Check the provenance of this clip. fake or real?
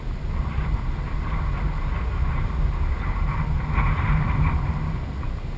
real